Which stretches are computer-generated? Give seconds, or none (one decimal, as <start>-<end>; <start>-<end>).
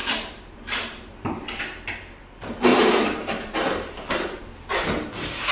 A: 0.0-1.6; 2.7-4.4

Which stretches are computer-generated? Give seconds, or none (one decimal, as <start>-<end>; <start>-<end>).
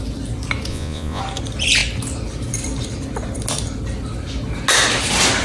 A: 0.7-1.2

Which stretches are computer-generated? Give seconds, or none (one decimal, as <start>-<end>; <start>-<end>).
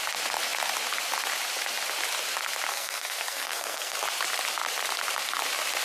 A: 2.7-4.0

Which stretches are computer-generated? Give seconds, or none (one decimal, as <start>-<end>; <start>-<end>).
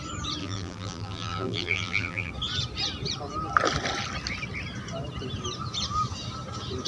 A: 0.4-2.3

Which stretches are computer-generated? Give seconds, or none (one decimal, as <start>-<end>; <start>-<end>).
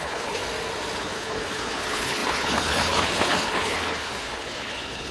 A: 0.0-0.4; 1.0-5.1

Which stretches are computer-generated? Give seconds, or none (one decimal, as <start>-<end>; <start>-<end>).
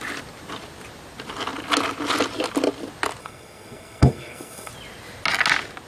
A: 3.2-4.7